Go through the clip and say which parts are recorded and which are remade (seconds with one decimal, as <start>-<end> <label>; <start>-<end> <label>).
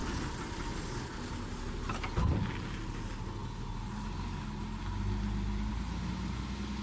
0.0-6.8 recorded